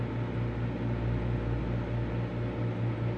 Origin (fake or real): real